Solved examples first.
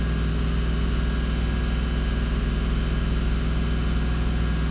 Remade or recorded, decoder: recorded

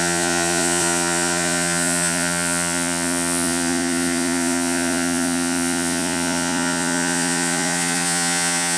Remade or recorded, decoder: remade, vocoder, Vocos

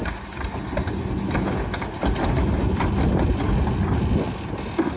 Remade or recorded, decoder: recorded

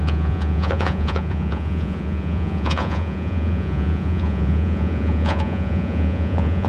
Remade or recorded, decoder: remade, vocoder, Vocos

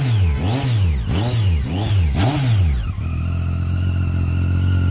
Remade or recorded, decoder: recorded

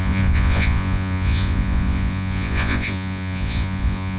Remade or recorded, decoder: remade, vocoder, Vocos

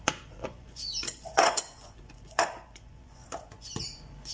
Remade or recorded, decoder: remade, vocoder, Vocos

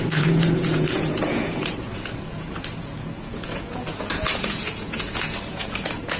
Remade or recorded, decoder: remade, vocoder, Vocos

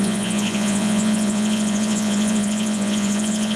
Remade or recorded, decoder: remade, vocoder, Vocos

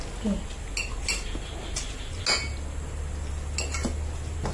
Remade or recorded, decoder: recorded